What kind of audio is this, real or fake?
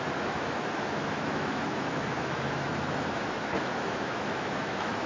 fake